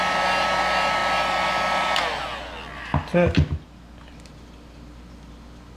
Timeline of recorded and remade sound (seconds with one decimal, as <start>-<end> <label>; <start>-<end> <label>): 0.0-5.8 recorded